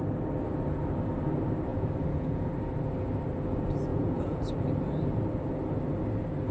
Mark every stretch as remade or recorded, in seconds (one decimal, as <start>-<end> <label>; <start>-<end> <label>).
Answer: 0.0-1.7 recorded; 1.7-2.5 remade; 2.5-3.9 recorded; 3.9-4.4 remade; 4.4-6.5 recorded